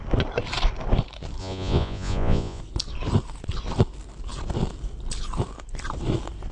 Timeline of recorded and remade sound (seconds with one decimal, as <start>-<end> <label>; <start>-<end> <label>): 0.0-1.4 recorded; 1.4-2.6 remade; 2.6-6.5 recorded

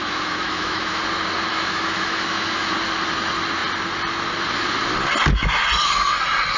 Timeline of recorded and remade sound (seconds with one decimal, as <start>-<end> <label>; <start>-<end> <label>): 0.0-1.0 remade; 1.0-1.5 recorded; 1.5-2.7 remade; 2.7-6.6 recorded